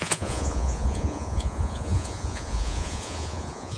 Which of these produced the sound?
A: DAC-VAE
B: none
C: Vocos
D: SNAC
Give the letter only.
C